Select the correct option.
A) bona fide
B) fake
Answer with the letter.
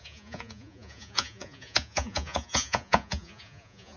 B